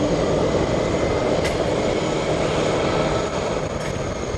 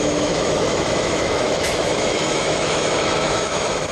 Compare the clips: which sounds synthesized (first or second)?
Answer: second